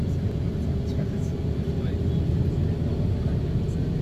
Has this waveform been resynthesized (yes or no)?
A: no